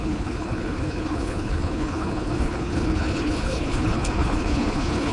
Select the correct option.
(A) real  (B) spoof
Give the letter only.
B